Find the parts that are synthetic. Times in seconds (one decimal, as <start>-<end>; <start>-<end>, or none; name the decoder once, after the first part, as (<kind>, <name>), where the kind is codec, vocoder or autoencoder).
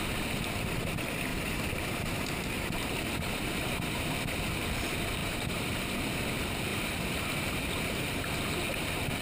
1.3-4.1 (vocoder, BigVGAN v2); 5.2-5.8; 6.7-8.3